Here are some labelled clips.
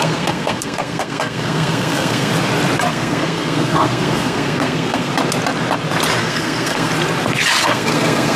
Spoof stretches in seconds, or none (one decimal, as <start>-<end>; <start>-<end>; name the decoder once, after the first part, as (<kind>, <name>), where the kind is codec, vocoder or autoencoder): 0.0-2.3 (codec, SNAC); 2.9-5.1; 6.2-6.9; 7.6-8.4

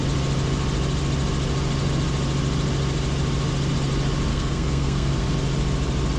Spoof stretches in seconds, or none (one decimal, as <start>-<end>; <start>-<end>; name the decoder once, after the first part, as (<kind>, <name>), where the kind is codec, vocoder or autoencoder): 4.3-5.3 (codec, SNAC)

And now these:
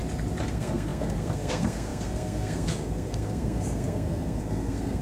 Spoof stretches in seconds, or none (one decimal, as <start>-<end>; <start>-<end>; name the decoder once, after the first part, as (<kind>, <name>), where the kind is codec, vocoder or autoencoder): 0.5-5.0 (codec, SNAC)

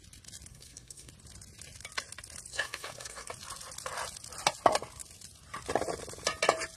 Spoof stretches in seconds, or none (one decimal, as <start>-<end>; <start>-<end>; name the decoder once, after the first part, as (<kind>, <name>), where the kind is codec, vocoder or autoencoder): 0.5-1.1 (codec, SNAC); 2.5-3.3

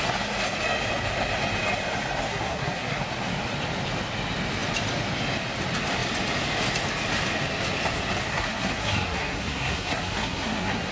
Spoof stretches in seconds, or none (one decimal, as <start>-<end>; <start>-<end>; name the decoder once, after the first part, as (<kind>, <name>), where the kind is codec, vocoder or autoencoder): 2.3-3.0 (codec, SNAC); 8.3-10.9

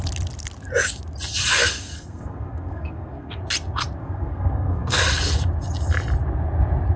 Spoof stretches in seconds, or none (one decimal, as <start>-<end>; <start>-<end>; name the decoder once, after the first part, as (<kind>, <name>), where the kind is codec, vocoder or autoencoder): 1.6-3.4 (codec, SNAC); 4.0-5.0

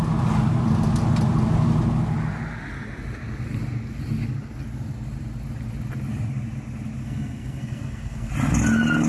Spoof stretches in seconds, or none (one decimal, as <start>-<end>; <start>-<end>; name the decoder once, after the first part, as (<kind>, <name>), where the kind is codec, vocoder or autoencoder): 7.0-8.3 (codec, SNAC)

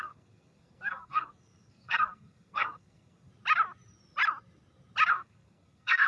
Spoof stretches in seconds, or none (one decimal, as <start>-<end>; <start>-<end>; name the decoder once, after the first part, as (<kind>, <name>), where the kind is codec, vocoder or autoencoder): 0.0-3.3 (codec, SNAC); 5.1-6.1